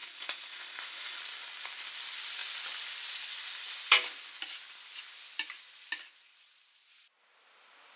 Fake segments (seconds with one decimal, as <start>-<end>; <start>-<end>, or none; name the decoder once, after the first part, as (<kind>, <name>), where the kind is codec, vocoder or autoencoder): 0.0-1.2 (vocoder, Vocos)